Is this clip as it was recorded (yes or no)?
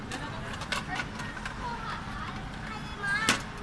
yes